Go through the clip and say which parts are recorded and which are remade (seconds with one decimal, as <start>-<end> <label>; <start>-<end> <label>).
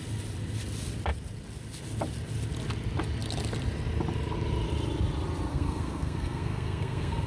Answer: 0.0-5.5 recorded; 5.5-7.3 remade